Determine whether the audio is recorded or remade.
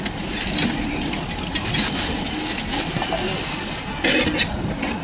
recorded